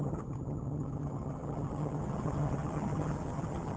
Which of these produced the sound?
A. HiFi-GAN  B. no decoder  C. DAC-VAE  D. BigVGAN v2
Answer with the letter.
A